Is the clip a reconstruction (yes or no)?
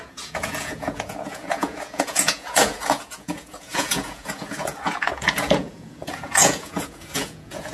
yes